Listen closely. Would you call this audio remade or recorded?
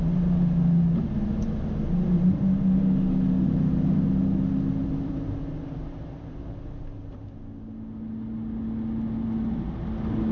recorded